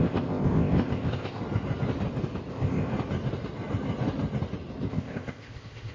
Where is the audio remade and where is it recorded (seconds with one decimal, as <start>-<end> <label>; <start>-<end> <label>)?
0.0-1.4 remade; 1.4-2.5 recorded; 2.5-2.9 remade; 2.9-4.9 recorded; 4.9-5.9 remade